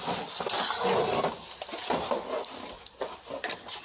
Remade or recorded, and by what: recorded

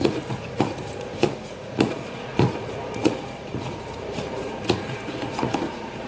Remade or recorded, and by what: remade, vocoder, Vocos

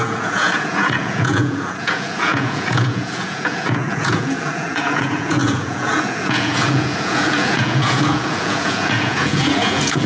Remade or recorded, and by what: remade, vocoder, Vocos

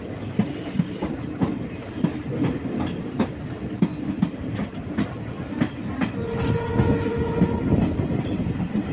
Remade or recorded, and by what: recorded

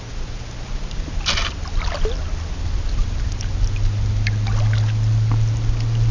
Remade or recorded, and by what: recorded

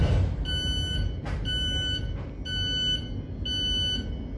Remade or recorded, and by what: recorded